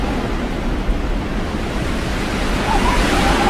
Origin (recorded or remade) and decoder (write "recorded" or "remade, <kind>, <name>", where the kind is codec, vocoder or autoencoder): recorded